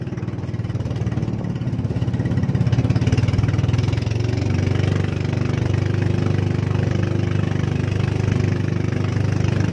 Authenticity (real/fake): real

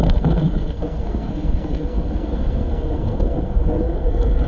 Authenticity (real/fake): fake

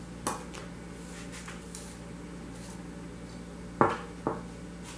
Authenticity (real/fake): real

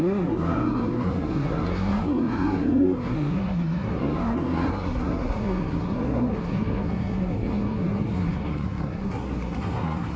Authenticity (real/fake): fake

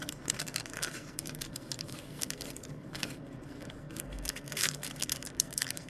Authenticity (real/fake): fake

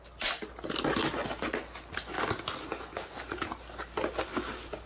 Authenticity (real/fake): real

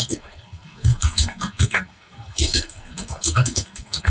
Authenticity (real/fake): fake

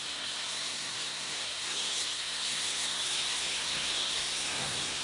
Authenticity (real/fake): fake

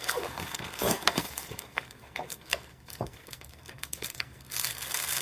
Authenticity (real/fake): fake